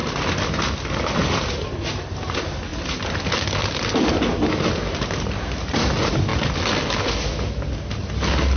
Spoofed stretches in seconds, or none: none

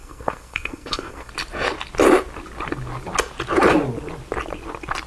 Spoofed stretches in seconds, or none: 0.0-1.3

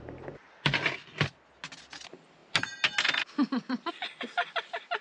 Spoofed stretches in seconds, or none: none

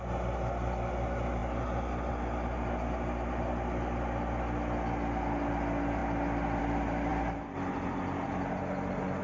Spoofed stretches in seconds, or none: none

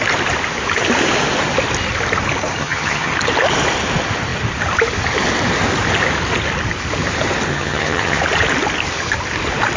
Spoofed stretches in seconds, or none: 2.6-3.1; 7.5-8.2

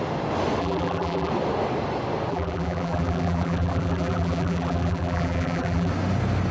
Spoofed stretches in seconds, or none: 0.6-1.3; 2.3-5.9